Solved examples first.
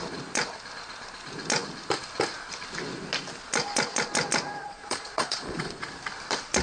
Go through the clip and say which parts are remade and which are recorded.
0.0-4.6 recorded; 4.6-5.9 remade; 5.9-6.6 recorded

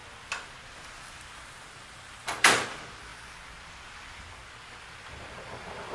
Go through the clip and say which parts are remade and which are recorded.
0.0-5.9 recorded

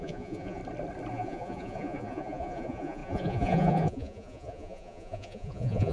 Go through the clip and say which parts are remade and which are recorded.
0.0-0.6 remade; 0.6-1.1 recorded; 1.1-5.9 remade

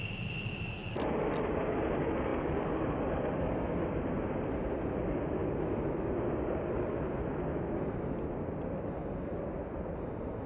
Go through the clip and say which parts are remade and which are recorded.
0.0-10.5 recorded

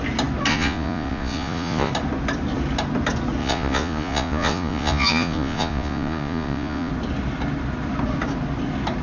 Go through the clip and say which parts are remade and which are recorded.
0.0-0.5 recorded; 0.5-1.9 remade; 1.9-3.4 recorded; 3.4-6.9 remade; 6.9-9.0 recorded

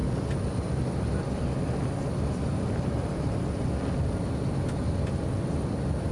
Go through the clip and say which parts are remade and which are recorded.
0.0-6.1 recorded

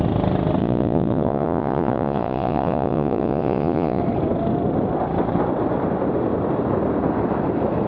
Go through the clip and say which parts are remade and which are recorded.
0.0-0.6 recorded; 0.6-4.0 remade; 4.0-7.9 recorded